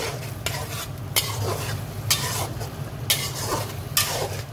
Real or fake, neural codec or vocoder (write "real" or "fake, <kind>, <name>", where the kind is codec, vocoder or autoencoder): real